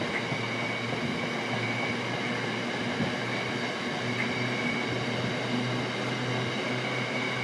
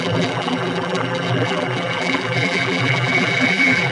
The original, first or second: first